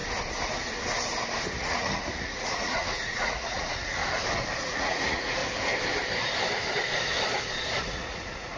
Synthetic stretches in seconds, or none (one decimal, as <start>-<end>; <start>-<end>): 1.5-4.0; 4.6-5.4; 7.8-8.6